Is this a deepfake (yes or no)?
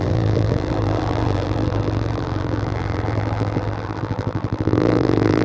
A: yes